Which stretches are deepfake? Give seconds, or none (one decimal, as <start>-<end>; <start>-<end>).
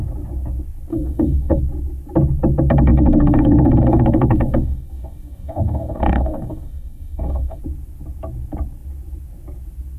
0.9-1.6; 2.9-7.6